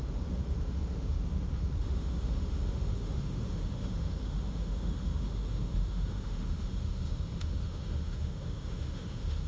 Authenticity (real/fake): fake